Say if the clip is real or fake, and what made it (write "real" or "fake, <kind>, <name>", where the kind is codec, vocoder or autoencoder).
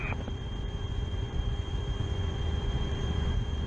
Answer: fake, vocoder, Vocos